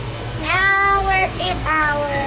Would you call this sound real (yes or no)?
no